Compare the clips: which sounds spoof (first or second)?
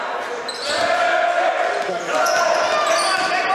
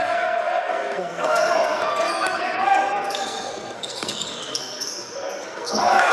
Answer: second